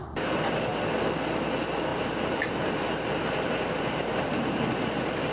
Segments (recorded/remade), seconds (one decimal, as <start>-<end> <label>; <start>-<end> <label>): 0.0-1.9 recorded; 1.9-4.6 remade; 4.6-5.3 recorded